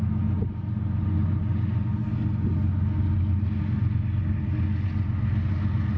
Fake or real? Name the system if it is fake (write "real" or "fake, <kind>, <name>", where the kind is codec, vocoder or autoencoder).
real